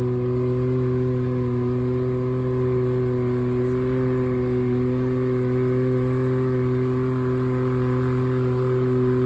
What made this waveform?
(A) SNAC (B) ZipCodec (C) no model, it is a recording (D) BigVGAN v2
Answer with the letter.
C